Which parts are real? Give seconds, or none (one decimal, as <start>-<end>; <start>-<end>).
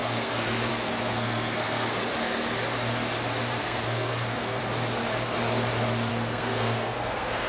2.1-3.6; 4.6-6.1